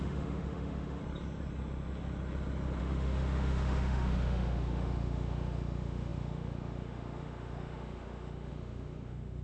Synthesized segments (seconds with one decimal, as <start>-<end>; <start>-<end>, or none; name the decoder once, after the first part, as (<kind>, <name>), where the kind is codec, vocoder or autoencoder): 0.0-1.0 (autoencoder, DAC-VAE); 2.8-9.4